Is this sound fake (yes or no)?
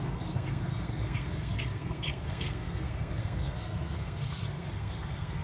yes